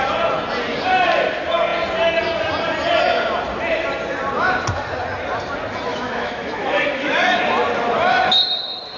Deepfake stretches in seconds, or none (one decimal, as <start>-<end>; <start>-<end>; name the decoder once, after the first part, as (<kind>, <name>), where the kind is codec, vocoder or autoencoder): 5.9-7.4 (autoencoder, DAC-VAE)

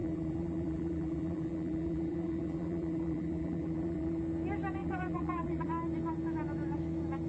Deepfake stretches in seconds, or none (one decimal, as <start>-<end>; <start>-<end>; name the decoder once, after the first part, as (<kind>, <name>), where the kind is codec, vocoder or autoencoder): 0.0-4.2 (vocoder, BigVGAN v2); 4.8-5.7

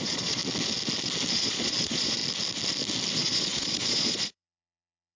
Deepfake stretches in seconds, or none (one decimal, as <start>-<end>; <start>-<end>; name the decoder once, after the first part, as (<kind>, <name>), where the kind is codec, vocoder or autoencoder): 0.0-0.4 (vocoder, Vocos); 1.3-2.2; 3.1-5.2